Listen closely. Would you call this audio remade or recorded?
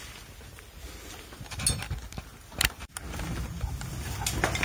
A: recorded